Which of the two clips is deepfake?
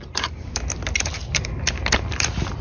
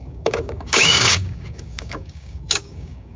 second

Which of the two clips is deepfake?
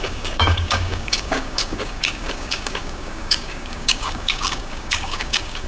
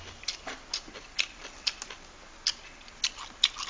first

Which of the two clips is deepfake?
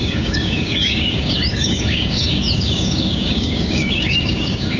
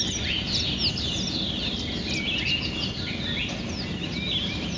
first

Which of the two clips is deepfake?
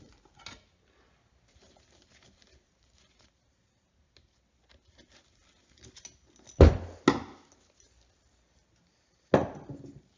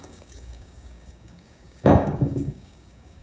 second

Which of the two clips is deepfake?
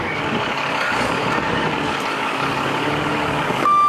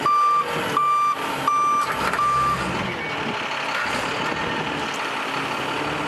first